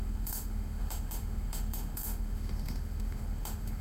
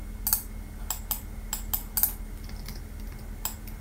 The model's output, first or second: first